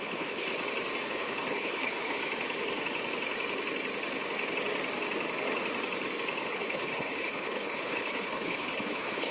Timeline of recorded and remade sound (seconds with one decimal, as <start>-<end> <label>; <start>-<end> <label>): 0.0-0.5 remade; 0.5-1.0 recorded; 1.0-2.2 remade; 2.2-6.5 recorded; 6.5-9.3 remade